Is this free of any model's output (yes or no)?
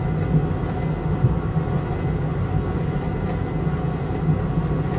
yes